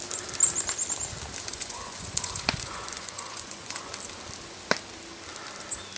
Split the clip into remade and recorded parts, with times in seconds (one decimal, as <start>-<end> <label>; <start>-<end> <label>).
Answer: 0.0-1.5 recorded; 1.5-3.9 remade; 3.9-6.0 recorded

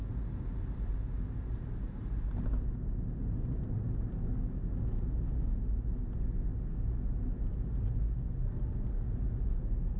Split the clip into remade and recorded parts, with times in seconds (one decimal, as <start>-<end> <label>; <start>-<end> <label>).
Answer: 0.0-10.0 recorded

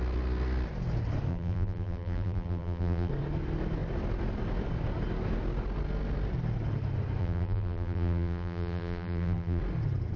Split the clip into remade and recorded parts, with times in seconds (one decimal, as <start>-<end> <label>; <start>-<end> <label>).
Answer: 0.0-1.3 recorded; 1.3-3.1 remade; 3.1-7.2 recorded; 7.2-9.6 remade; 9.6-10.2 recorded